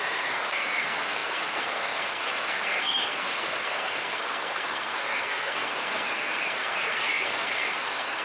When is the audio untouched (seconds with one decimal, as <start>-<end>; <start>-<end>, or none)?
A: none